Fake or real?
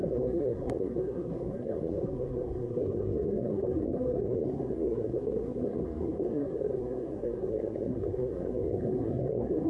fake